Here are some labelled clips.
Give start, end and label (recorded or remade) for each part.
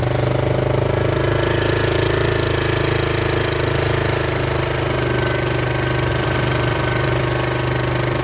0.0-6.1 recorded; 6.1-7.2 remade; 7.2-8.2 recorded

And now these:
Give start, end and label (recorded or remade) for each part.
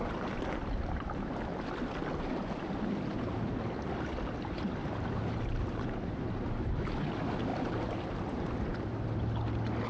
0.0-4.8 recorded; 4.8-6.5 remade; 6.5-7.5 recorded; 7.5-8.7 remade; 8.7-9.9 recorded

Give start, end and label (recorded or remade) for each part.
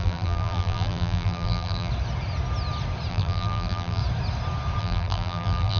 0.0-1.9 remade; 1.9-3.1 recorded; 3.1-4.0 remade; 4.0-4.8 recorded; 4.8-5.8 remade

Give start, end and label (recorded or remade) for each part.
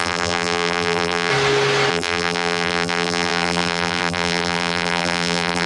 0.0-1.3 remade; 1.3-1.9 recorded; 1.9-5.7 remade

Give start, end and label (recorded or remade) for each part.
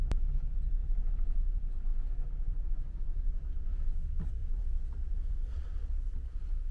0.0-0.8 remade; 0.8-1.4 recorded; 1.4-6.7 remade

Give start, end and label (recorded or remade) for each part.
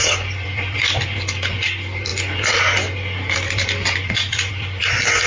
0.0-5.3 recorded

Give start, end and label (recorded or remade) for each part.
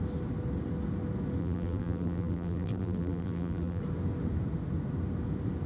0.0-1.4 recorded; 1.4-3.8 remade; 3.8-5.7 recorded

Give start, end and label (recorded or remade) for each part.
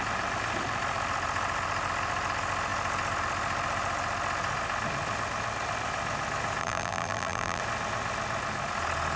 0.0-6.6 recorded; 6.6-7.6 remade; 7.6-9.2 recorded